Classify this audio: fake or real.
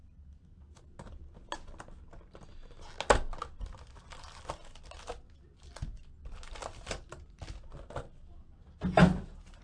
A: real